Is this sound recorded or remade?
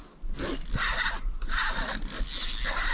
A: recorded